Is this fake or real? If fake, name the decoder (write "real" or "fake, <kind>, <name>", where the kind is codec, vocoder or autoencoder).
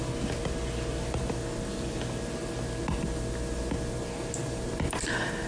real